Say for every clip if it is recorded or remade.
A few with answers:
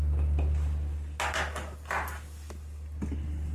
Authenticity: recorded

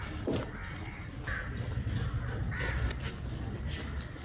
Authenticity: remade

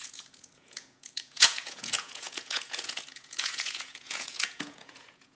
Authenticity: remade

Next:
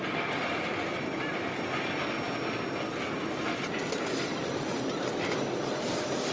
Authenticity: recorded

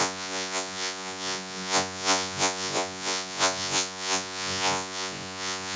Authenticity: remade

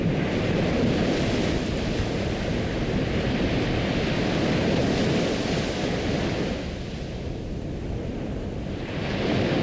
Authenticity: recorded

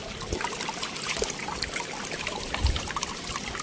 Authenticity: recorded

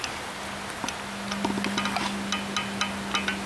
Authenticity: recorded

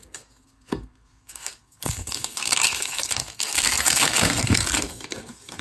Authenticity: remade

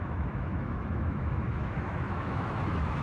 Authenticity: remade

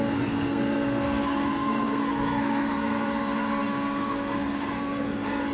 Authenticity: remade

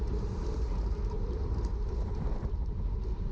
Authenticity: remade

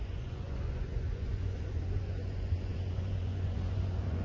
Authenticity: remade